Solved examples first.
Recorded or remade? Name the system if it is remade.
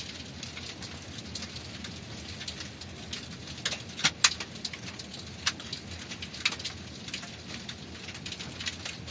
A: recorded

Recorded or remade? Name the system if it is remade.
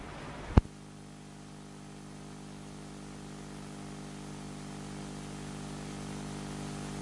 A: recorded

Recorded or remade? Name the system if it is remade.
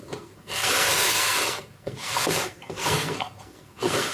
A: remade, codec, SNAC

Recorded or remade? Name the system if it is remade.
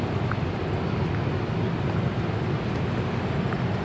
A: recorded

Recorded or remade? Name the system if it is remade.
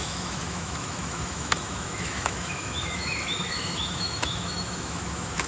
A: remade, autoencoder, DAC-VAE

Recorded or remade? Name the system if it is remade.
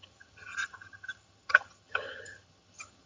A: remade, vocoder, HiFi-GAN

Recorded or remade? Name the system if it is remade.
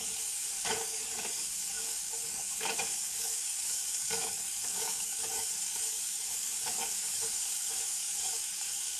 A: remade, codec, DAC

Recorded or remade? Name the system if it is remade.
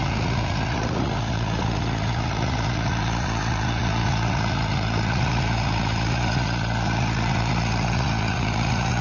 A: remade, vocoder, Vocos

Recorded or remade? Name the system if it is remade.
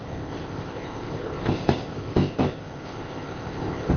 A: remade, codec, ZipCodec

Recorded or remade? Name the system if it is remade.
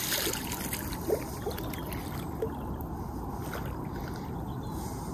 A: recorded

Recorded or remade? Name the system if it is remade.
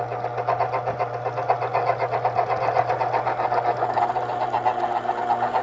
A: recorded